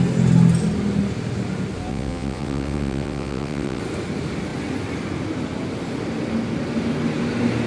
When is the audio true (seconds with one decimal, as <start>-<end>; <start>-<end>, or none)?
0.0-1.9; 3.8-7.7